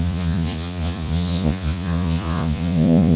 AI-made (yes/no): yes